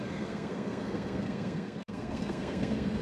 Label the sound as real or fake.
fake